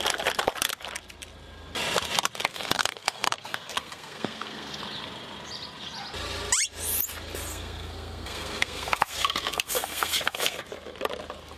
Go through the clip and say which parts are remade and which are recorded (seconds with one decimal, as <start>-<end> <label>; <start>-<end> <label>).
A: 0.0-2.5 recorded; 2.5-4.8 remade; 4.8-7.5 recorded; 7.5-10.6 remade; 10.6-11.6 recorded